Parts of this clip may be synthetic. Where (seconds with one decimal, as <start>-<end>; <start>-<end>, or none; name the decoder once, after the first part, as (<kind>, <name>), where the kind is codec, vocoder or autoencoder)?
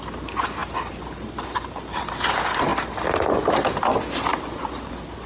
none